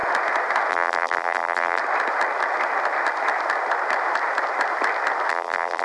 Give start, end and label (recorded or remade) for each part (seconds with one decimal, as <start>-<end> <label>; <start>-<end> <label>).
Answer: 0.0-0.7 recorded; 0.7-1.8 remade; 1.8-5.3 recorded; 5.3-5.8 remade